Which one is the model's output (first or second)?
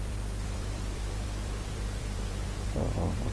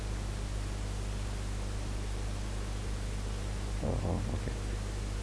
first